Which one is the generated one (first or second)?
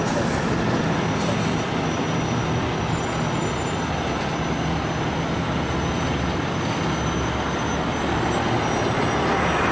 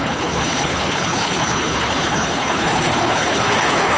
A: second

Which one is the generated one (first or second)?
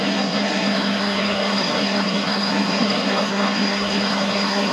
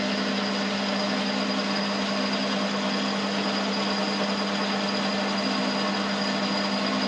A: first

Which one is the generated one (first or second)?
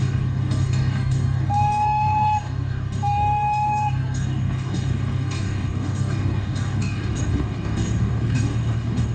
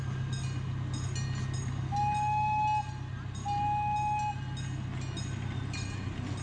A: first